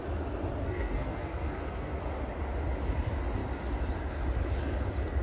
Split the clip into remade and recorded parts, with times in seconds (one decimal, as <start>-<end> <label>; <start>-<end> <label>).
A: 0.0-0.6 recorded; 0.6-2.0 remade; 2.0-5.2 recorded